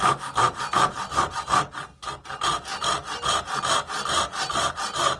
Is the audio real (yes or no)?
yes